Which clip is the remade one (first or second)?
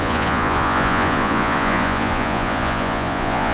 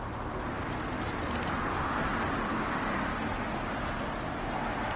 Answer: first